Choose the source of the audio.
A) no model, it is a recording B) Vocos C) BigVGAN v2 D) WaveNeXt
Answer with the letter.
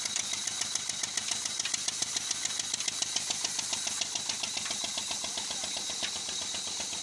A